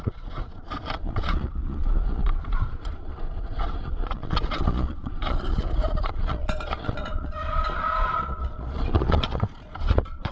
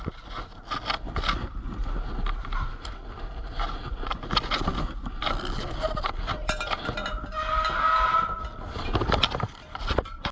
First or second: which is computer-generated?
first